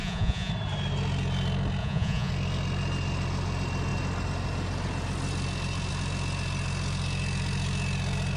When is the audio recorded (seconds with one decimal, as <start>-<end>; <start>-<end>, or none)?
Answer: 0.5-1.8; 2.3-8.4